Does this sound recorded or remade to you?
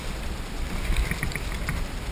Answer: recorded